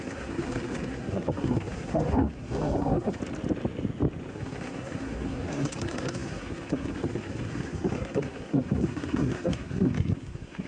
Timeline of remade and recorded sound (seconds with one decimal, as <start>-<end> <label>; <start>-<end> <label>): 0.0-3.2 remade; 3.2-4.3 recorded; 4.3-10.7 remade